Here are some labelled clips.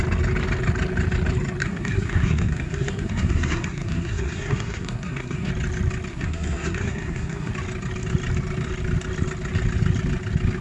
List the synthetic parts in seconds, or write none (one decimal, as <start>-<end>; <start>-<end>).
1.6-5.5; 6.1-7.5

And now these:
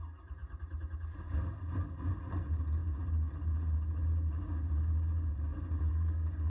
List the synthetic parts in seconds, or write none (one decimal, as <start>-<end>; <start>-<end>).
5.9-6.5

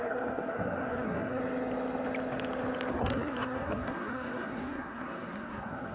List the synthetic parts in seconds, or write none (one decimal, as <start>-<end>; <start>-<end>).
0.0-1.4; 2.9-5.9